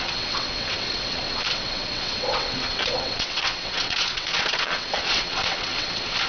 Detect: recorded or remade remade